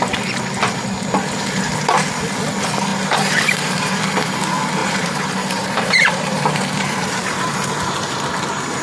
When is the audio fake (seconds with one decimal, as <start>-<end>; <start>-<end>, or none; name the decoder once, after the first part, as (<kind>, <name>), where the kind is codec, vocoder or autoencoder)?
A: 2.9-4.0 (vocoder, BigVGAN v2); 4.8-8.8